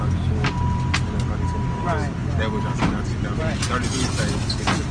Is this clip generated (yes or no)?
no